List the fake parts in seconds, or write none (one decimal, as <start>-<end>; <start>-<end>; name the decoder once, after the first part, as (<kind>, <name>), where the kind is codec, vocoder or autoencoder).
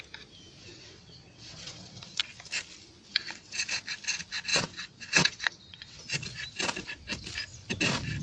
0.6-2.2 (vocoder, WaveNeXt); 3.1-3.8; 4.5-6.0